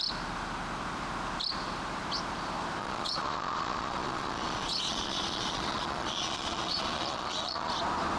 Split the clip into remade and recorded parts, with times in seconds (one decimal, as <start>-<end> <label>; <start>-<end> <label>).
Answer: 0.0-2.8 recorded; 2.8-7.7 remade; 7.7-8.2 recorded